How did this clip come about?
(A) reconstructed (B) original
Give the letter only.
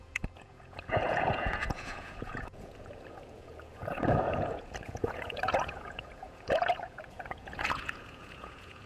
A